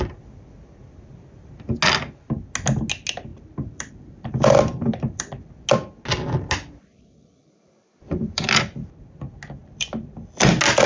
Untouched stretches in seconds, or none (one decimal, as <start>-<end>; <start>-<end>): 0.0-3.3; 5.5-6.9; 9.0-9.6; 10.5-10.9